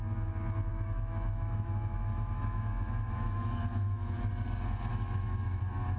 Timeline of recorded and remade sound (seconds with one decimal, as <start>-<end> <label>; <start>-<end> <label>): 0.0-0.7 recorded; 0.7-4.3 remade; 4.3-4.9 recorded; 4.9-5.6 remade; 5.6-6.0 recorded